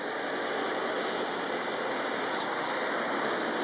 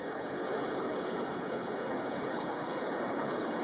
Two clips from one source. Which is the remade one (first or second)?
second